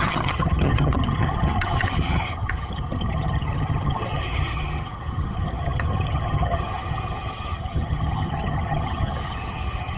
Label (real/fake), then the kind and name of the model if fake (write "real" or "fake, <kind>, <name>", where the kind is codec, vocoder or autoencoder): fake, vocoder, HiFi-GAN